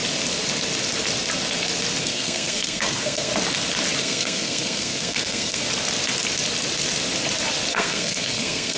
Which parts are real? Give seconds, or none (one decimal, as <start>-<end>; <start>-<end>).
0.0-2.0; 3.3-4.0; 5.6-7.7